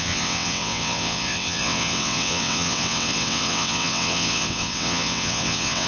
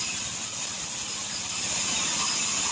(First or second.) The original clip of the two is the second